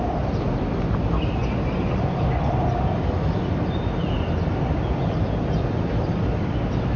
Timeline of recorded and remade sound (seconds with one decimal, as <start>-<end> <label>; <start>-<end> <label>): 0.0-7.0 recorded